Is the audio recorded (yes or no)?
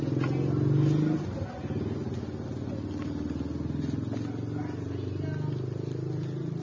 yes